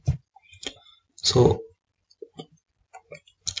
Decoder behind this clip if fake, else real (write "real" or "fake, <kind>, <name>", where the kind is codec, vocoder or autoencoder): real